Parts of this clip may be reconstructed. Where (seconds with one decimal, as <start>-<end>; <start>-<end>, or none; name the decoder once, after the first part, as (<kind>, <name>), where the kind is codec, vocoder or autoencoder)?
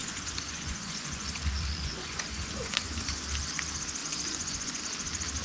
0.0-3.2 (vocoder, Vocos); 4.0-4.8